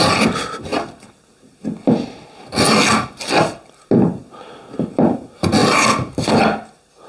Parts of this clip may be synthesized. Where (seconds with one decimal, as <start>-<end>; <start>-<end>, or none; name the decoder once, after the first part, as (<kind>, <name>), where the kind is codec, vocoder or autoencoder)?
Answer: none